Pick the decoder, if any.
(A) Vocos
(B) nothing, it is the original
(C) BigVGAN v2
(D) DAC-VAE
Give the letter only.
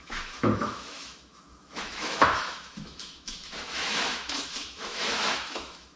D